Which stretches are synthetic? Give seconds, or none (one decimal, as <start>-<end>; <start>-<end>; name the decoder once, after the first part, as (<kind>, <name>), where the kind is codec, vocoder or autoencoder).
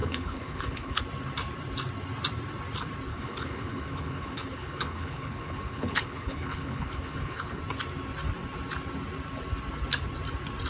0.0-1.0 (codec, HILCodec); 3.1-7.6